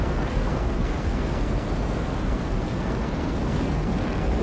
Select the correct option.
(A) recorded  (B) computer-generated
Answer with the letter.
B